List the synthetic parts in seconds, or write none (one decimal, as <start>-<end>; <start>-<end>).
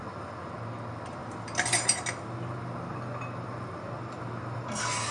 none